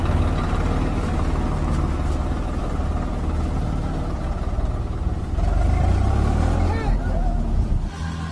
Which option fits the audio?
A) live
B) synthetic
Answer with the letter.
A